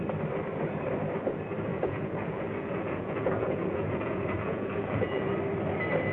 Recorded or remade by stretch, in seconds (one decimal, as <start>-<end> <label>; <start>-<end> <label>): 0.0-1.7 recorded; 1.7-5.3 remade; 5.3-6.1 recorded